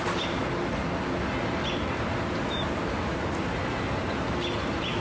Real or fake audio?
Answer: real